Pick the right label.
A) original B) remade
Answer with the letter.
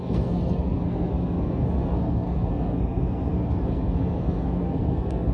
B